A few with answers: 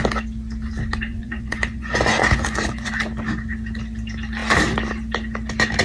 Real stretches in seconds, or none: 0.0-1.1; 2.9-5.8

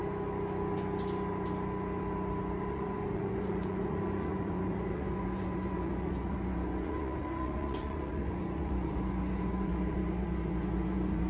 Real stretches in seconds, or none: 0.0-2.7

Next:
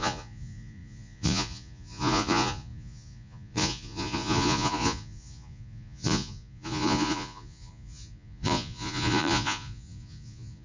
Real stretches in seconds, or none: none